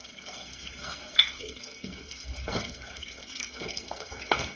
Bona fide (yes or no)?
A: no